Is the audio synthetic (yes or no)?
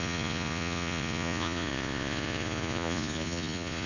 yes